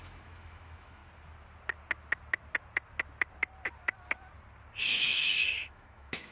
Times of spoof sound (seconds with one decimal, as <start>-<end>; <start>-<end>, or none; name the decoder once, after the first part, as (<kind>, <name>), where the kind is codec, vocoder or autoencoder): 0.0-1.0 (autoencoder, DAC-VAE); 4.8-6.3